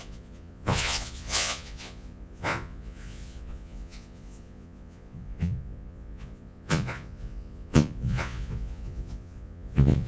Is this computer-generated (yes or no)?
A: yes